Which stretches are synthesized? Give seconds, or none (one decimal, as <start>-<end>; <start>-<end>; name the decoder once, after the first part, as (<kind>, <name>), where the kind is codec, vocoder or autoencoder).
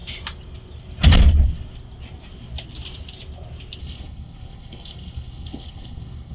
3.8-6.3 (codec, SNAC)